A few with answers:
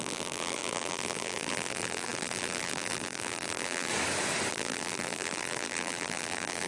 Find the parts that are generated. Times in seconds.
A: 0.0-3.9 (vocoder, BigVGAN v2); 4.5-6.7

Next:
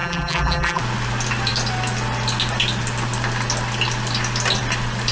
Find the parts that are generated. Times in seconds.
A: 0.0-0.8 (vocoder, BigVGAN v2)

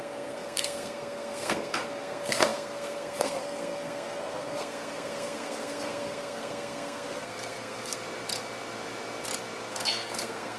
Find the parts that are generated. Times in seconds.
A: 0.0-8.0 (codec, SNAC); 9.7-10.6

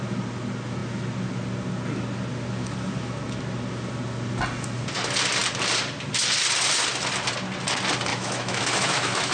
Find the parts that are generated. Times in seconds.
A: 8.1-9.3 (autoencoder, DAC-VAE)